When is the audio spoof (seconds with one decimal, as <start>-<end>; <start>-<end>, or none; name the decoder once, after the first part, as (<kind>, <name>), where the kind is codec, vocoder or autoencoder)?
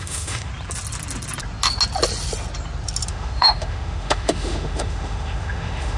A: 0.0-0.5 (autoencoder, DAC-VAE); 3.1-6.0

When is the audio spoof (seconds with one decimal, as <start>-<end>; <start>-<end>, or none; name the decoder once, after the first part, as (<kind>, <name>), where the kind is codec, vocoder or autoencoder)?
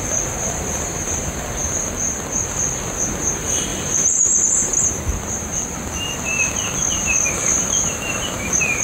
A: 3.7-5.0 (vocoder, BigVGAN v2)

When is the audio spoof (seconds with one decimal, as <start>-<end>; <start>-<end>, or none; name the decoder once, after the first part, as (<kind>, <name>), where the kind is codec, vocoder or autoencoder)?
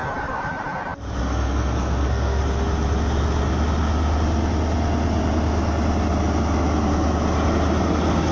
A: 1.2-2.4 (codec, SNAC)